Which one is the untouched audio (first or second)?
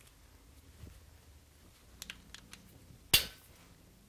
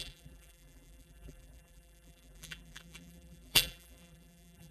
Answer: first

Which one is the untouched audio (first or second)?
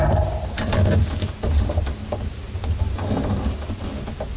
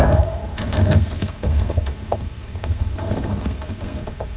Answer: first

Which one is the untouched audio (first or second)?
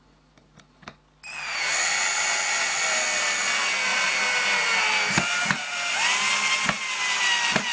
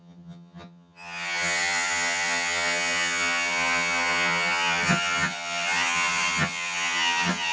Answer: first